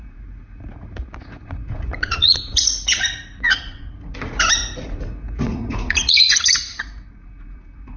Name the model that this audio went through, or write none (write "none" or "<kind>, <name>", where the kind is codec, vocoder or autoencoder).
vocoder, Vocos